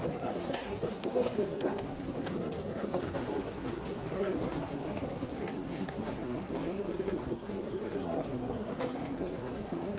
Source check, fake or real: fake